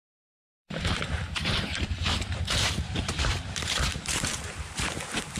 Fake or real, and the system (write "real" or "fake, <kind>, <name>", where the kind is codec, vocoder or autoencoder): fake, vocoder, BigVGAN v2